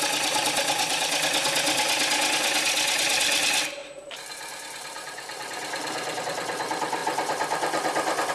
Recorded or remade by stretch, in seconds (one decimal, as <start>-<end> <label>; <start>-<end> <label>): 0.0-3.8 recorded; 3.8-6.2 remade; 6.2-8.3 recorded